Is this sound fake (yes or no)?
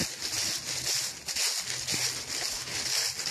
no